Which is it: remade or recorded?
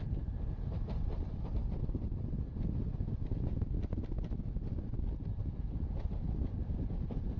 recorded